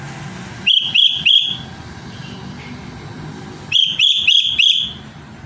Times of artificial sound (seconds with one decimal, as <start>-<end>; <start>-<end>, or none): none